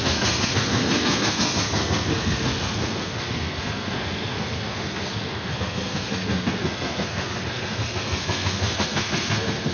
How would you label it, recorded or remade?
remade